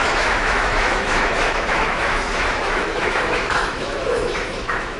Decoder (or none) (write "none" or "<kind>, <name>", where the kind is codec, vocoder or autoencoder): autoencoder, DAC-VAE